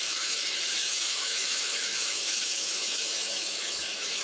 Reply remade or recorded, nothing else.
remade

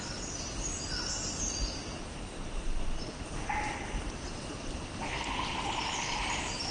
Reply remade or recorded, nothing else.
recorded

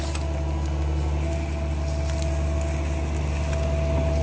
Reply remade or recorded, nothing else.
recorded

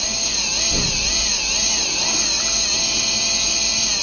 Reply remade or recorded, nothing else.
recorded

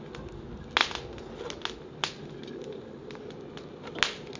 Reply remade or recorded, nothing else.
recorded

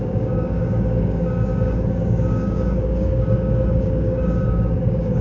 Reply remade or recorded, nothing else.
remade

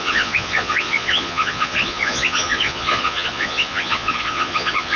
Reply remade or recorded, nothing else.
remade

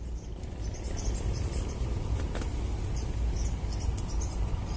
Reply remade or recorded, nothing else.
recorded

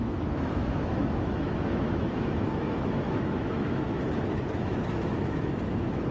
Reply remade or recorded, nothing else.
remade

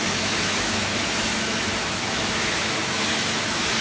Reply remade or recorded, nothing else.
remade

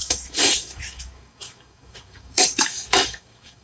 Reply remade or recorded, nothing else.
remade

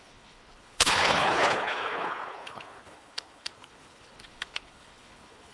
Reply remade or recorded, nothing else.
remade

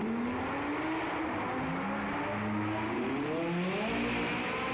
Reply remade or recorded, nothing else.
recorded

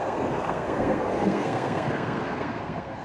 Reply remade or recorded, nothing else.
remade